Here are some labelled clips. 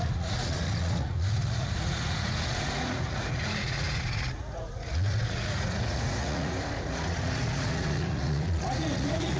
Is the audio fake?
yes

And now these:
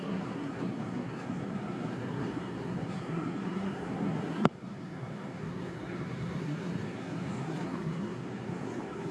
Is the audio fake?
yes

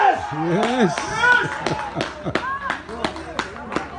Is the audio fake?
no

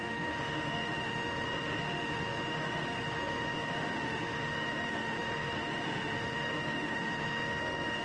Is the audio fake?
yes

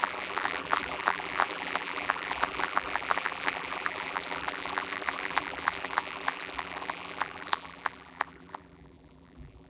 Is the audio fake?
yes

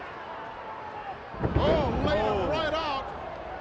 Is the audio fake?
yes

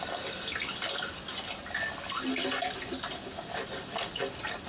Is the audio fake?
no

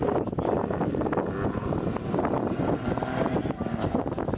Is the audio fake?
no